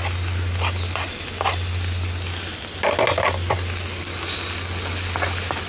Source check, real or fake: real